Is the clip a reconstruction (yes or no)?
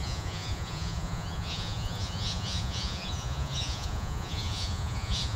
yes